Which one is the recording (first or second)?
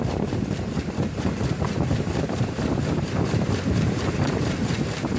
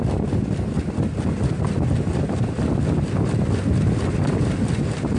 second